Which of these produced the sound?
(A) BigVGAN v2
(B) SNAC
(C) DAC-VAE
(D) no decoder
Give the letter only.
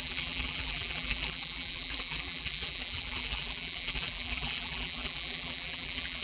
A